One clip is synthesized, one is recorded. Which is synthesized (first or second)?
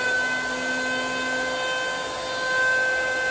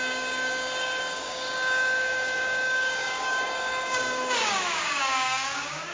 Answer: second